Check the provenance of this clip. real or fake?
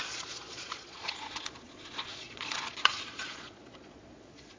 fake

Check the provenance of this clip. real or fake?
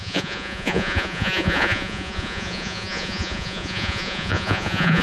fake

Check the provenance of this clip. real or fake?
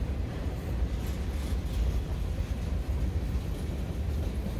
real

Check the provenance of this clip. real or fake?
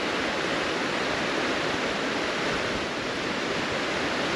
real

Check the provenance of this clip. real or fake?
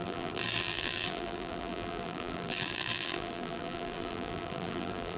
fake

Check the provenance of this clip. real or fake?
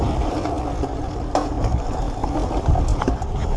real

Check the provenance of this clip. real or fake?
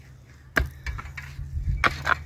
real